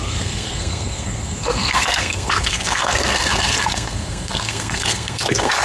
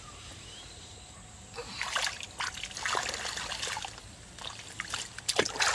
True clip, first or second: second